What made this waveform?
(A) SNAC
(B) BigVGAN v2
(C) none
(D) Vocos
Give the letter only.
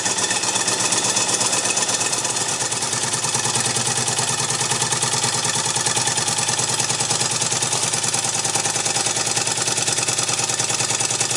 C